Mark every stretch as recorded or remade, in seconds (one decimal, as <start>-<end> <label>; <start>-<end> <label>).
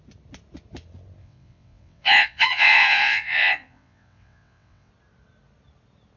0.0-1.2 recorded; 1.2-4.9 remade; 4.9-6.2 recorded